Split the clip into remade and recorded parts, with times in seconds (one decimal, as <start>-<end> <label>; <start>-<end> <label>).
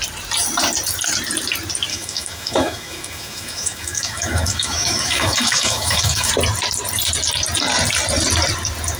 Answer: 0.0-1.9 recorded; 1.9-6.3 remade; 6.3-9.0 recorded